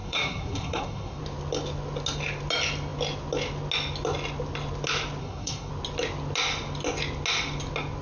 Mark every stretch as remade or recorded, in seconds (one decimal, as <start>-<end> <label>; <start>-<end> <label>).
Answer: 0.0-1.2 remade; 1.2-5.2 recorded; 5.2-5.7 remade; 5.7-8.0 recorded